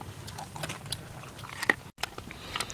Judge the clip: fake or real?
real